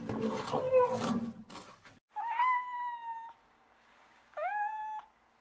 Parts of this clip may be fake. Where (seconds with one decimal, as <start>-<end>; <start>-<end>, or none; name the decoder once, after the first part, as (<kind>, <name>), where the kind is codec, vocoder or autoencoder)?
3.4-4.5 (codec, DAC)